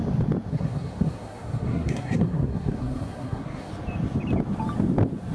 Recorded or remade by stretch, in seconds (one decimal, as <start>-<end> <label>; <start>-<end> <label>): 0.0-0.5 recorded; 0.5-3.7 remade; 3.7-5.3 recorded